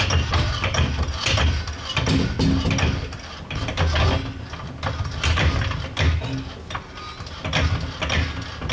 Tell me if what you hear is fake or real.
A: real